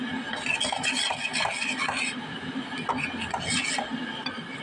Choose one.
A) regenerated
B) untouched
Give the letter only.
B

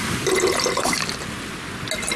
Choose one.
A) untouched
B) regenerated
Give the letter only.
A